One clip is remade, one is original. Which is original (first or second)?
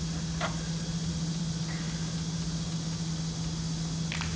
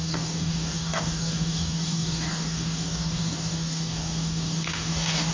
first